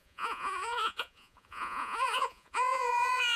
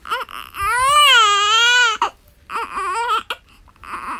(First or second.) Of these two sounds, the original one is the second